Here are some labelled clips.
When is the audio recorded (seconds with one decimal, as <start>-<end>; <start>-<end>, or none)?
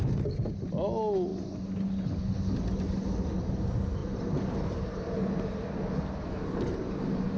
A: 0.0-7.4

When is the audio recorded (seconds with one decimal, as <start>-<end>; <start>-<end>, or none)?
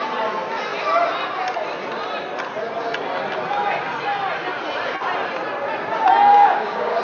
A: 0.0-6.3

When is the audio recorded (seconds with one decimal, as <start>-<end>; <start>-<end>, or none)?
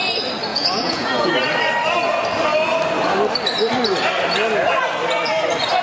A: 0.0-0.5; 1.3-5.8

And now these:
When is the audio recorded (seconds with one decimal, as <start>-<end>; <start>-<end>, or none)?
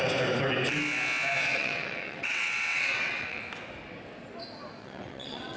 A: 0.0-1.5; 3.4-4.8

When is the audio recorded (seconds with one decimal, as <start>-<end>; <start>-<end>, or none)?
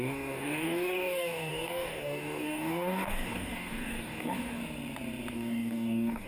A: 4.6-5.3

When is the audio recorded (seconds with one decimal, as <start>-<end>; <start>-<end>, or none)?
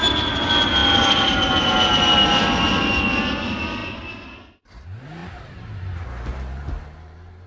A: 0.0-5.2; 6.1-7.5